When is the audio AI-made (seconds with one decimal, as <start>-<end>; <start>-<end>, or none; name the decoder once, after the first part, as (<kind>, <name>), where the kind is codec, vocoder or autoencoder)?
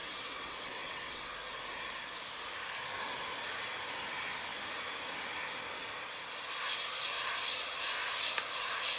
0.0-1.3 (vocoder, WaveNeXt)